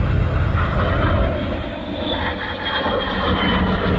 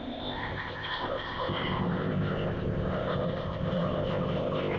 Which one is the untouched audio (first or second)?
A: first